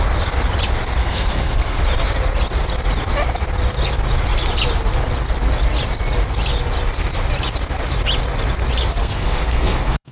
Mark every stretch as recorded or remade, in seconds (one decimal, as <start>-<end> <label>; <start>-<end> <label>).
0.0-1.0 recorded; 1.0-1.8 remade; 1.8-9.0 recorded; 9.0-10.1 remade